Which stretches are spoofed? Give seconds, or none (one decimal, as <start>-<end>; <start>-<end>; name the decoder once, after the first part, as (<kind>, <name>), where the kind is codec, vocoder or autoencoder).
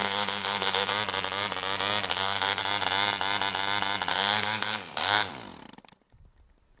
0.0-0.9 (codec, SNAC); 2.1-2.6; 4.1-5.3